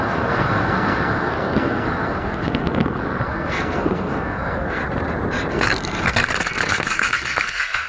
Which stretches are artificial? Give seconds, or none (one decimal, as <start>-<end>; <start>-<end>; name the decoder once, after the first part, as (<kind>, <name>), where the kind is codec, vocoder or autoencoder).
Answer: 0.0-4.8 (codec, SNAC); 5.5-7.9